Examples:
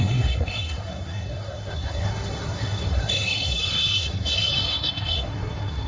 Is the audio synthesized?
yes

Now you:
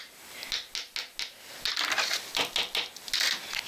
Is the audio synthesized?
no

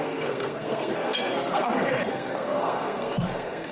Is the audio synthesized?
yes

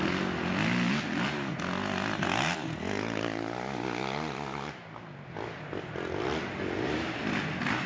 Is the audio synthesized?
no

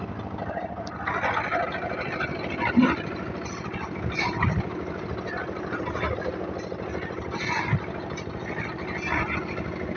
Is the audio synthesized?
no